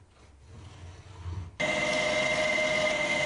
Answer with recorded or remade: recorded